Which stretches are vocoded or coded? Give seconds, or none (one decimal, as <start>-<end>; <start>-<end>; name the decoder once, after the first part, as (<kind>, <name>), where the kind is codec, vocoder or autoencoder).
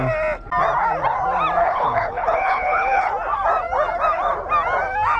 1.6-3.1 (codec, HILCodec)